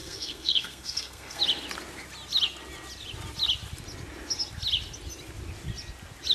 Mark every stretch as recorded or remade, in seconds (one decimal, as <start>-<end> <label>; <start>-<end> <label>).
0.0-1.4 remade; 1.4-6.3 recorded